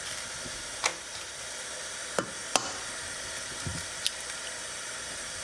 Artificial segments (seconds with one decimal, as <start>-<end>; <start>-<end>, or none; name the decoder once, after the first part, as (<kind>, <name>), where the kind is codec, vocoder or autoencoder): 0.9-1.4 (vocoder, BigVGAN v2); 3.7-5.4

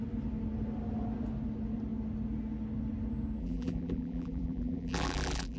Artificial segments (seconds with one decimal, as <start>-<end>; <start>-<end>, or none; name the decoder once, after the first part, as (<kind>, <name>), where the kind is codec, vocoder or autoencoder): 3.4-5.6 (vocoder, BigVGAN v2)